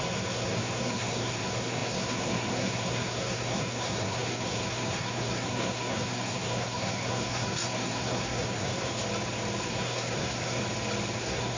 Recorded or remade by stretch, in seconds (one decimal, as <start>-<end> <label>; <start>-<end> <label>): 0.0-8.9 remade; 8.9-9.6 recorded; 9.6-10.6 remade; 10.6-11.2 recorded; 11.2-11.6 remade